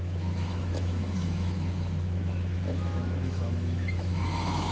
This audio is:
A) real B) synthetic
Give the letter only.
B